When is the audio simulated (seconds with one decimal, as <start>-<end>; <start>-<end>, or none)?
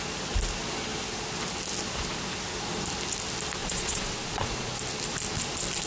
3.6-4.7